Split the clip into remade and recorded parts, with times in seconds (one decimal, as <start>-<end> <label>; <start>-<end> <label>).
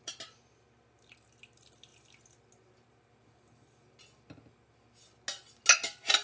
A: 0.0-6.2 recorded